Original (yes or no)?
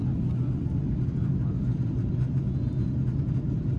yes